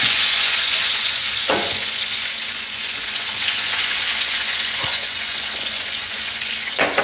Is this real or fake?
fake